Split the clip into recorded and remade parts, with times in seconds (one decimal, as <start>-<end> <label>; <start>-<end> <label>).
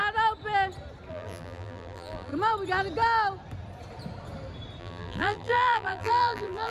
0.0-1.1 recorded; 1.1-2.3 remade; 2.3-4.8 recorded; 4.8-6.7 remade